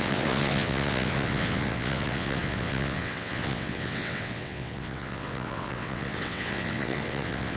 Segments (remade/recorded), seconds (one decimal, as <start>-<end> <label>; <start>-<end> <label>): 0.0-7.6 remade